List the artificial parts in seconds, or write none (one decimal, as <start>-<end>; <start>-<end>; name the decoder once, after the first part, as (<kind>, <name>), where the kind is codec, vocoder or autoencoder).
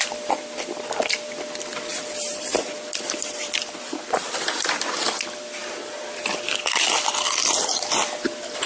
0.0-8.7 (vocoder, BigVGAN v2)